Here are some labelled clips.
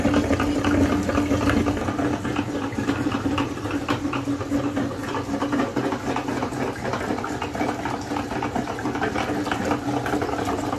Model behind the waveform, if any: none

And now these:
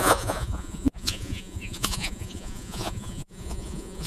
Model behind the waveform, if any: vocoder, Vocos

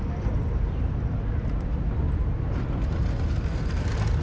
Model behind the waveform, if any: none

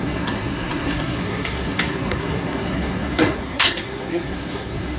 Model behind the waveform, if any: codec, SNAC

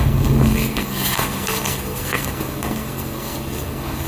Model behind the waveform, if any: codec, SNAC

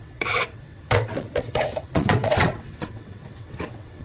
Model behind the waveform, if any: vocoder, WaveNeXt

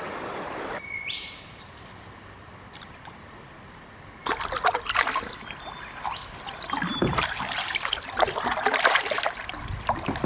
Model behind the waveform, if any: vocoder, BigVGAN v2